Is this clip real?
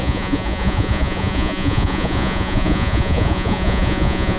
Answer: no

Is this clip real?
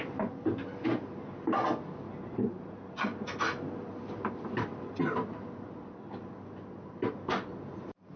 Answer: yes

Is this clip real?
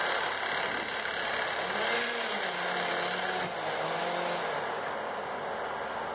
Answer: yes